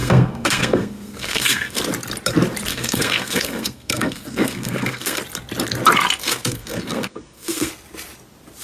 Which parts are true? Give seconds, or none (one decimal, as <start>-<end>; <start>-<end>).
1.8-2.7; 5.2-6.2; 7.7-8.6